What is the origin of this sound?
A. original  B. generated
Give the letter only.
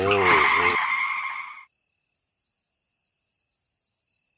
A